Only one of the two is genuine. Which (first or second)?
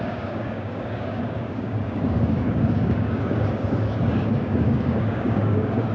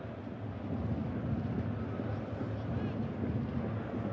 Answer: second